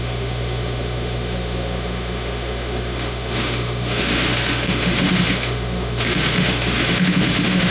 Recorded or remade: remade